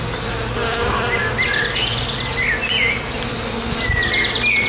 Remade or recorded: recorded